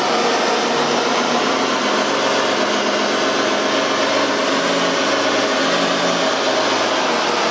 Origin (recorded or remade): recorded